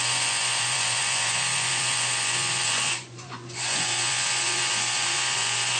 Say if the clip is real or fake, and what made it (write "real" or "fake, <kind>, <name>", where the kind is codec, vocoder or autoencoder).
fake, vocoder, Vocos